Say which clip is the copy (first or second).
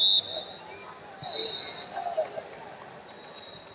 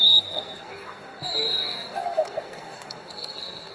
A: second